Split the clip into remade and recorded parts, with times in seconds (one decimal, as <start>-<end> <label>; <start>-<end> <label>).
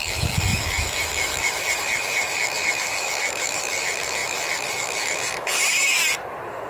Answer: 0.0-6.0 remade; 6.0-6.7 recorded